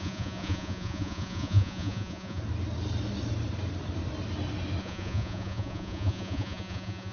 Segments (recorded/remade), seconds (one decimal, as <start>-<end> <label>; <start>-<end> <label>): 0.0-2.4 remade; 2.4-4.8 recorded; 4.8-7.1 remade